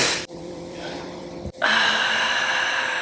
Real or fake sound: fake